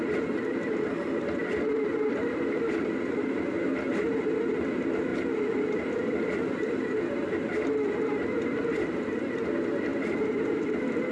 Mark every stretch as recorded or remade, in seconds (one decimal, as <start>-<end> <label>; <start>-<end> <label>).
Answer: 0.0-11.1 recorded